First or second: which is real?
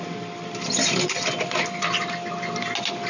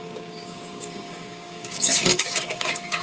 first